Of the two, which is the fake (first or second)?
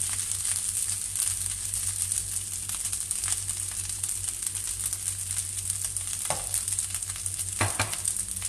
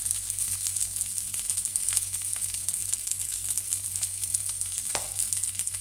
second